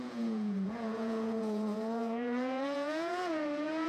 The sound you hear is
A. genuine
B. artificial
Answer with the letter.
B